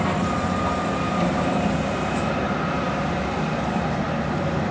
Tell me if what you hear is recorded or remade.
remade